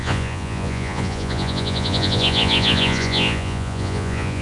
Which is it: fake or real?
fake